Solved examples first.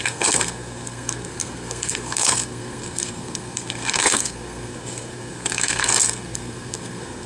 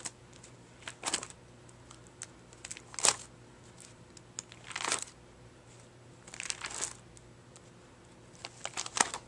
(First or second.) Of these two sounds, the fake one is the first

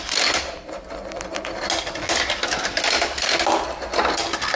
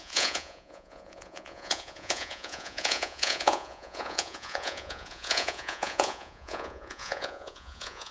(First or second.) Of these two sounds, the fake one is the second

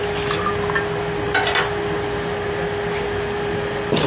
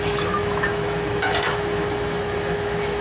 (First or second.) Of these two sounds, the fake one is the second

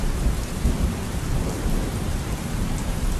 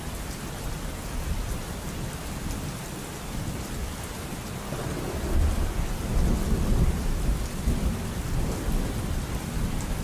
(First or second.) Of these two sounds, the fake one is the first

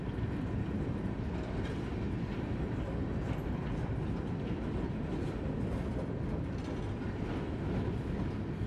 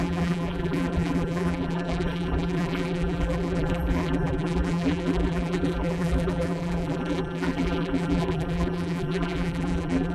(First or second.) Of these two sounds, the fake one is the second